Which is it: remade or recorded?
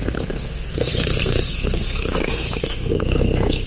remade